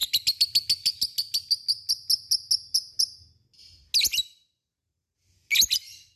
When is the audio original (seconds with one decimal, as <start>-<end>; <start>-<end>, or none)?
0.0-6.2